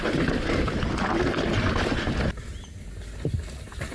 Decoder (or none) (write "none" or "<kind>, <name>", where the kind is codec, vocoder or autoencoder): none